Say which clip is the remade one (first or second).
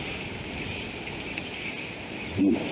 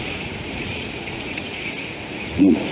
second